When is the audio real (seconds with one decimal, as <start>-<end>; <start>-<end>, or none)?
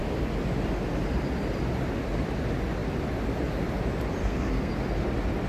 0.0-4.2; 4.7-5.5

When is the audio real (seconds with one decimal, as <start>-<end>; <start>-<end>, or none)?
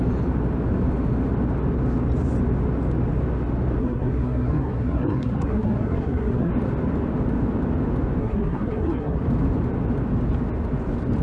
0.0-3.8; 6.5-8.2; 9.2-11.2